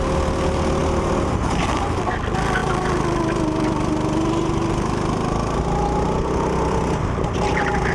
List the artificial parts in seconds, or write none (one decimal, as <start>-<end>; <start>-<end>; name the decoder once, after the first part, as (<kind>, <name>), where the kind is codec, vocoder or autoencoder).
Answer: none